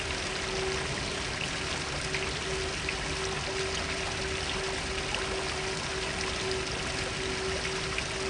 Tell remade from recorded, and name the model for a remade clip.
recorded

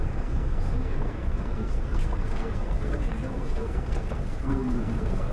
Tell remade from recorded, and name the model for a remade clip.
remade, codec, SNAC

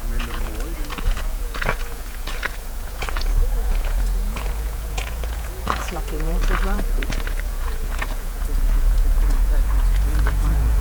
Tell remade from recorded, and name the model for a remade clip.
remade, vocoder, Vocos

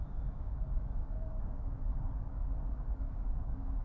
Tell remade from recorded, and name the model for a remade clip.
remade, codec, DAC